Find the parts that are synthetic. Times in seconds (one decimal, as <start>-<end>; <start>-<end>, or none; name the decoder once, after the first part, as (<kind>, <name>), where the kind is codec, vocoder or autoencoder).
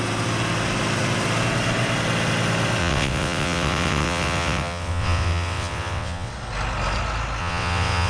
2.8-6.3 (vocoder, WaveNeXt); 7.4-8.1